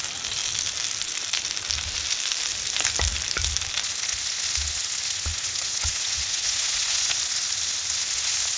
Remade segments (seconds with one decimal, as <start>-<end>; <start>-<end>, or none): 5.3-7.1